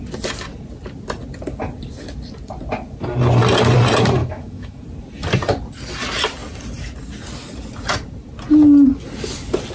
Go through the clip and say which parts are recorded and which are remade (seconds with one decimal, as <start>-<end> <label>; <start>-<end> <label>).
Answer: 0.0-4.2 recorded; 4.2-4.8 remade; 4.8-9.7 recorded